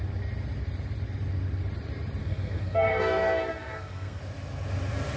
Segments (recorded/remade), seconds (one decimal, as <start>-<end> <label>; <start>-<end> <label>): 0.0-2.2 recorded; 2.2-4.2 remade; 4.2-5.2 recorded